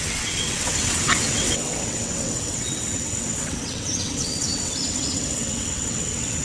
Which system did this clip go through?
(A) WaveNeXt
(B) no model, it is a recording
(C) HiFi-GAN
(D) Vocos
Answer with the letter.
A